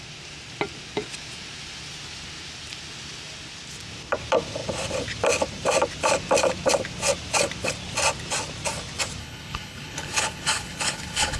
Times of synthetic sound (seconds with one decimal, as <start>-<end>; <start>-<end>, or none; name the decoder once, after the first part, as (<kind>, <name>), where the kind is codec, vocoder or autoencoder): 9.2-11.4 (codec, HILCodec)